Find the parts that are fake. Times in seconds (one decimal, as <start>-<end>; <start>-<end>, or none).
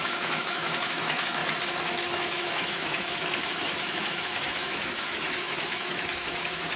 0.0-1.4; 2.0-6.8